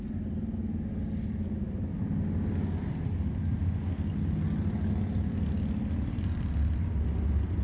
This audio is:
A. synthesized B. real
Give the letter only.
B